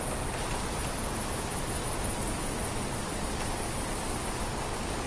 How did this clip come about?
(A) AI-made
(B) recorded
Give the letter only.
B